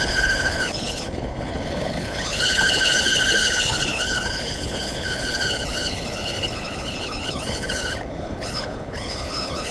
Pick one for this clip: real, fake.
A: fake